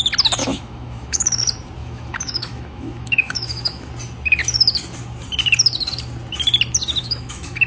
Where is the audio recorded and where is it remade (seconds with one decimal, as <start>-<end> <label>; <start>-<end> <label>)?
0.0-0.4 recorded; 0.4-1.4 remade; 1.4-1.8 recorded; 1.8-3.9 remade; 3.9-7.0 recorded; 7.0-7.7 remade